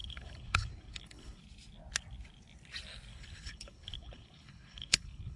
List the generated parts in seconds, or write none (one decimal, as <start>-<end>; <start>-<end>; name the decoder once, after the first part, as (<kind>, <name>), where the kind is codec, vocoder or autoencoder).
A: 0.0-1.4 (codec, HILCodec); 3.1-5.4